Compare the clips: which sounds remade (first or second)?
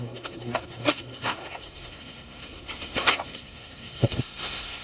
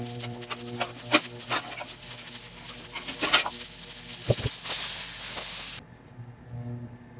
first